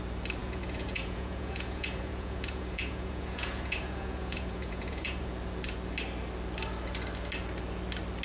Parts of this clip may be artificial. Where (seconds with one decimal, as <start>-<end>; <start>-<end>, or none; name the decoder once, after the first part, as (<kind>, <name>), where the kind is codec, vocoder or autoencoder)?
0.4-5.3 (vocoder, Vocos)